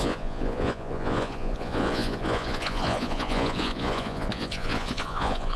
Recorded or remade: remade